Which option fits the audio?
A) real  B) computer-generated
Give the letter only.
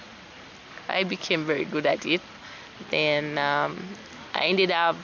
A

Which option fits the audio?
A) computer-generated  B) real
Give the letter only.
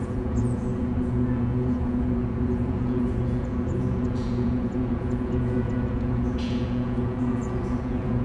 A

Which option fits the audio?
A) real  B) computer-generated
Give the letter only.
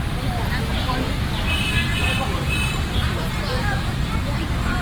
A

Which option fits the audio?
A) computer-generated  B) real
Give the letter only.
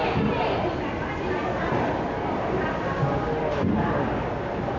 B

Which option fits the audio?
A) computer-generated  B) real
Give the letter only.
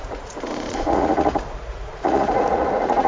A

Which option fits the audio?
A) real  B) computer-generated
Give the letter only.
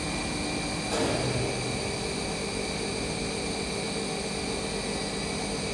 A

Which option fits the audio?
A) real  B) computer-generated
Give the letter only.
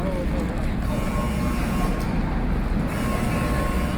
A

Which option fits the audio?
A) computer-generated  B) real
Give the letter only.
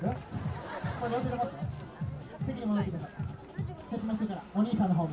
B